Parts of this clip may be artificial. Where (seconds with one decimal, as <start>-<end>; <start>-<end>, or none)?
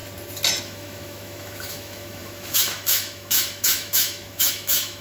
0.6-5.0